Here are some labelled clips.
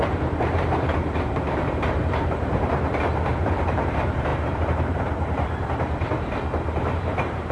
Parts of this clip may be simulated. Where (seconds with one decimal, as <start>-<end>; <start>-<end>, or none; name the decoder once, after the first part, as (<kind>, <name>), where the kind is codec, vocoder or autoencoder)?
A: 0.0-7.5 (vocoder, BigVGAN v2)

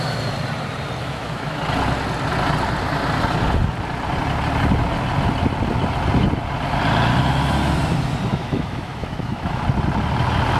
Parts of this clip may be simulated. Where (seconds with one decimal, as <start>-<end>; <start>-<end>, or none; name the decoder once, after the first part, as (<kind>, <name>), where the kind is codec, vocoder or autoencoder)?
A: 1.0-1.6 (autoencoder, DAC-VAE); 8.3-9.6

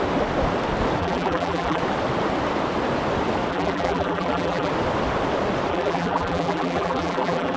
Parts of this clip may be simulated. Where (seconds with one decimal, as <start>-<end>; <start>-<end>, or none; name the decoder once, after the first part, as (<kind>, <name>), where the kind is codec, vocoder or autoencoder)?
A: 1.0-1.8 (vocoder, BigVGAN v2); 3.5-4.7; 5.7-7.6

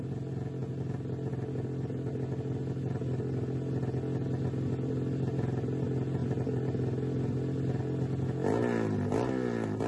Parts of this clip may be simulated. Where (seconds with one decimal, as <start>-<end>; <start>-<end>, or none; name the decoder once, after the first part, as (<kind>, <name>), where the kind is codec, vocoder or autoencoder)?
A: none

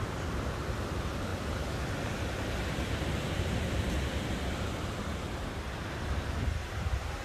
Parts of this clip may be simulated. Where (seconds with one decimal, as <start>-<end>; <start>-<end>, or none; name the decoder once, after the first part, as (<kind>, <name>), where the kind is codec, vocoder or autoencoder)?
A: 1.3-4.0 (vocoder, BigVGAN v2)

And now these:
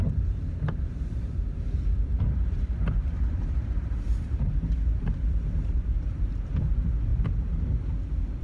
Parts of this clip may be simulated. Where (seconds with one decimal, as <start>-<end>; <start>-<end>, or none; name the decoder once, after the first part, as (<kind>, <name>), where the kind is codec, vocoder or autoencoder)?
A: 0.0-7.1 (vocoder, BigVGAN v2); 8.0-8.4

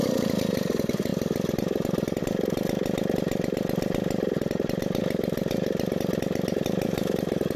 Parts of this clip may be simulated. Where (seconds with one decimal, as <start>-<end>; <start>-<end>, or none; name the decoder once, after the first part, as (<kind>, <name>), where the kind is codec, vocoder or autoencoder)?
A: none